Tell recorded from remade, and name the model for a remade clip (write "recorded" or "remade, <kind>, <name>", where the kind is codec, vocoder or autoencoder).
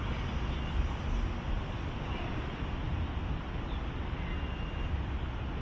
recorded